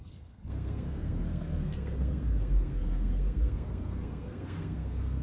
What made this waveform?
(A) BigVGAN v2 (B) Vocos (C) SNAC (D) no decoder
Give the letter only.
C